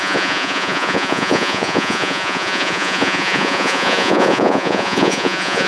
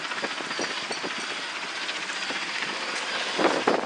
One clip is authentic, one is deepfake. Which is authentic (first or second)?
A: second